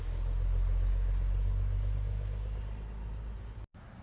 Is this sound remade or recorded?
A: recorded